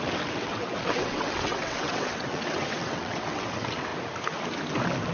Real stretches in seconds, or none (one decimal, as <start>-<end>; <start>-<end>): 3.9-5.1